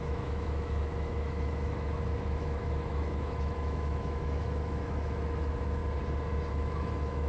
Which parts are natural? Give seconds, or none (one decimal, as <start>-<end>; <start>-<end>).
5.8-6.5